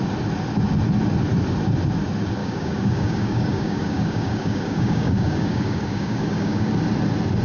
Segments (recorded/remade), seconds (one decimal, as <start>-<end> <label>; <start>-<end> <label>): 0.0-2.4 recorded; 2.4-6.7 remade; 6.7-7.4 recorded